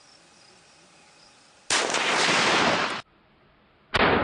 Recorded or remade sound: recorded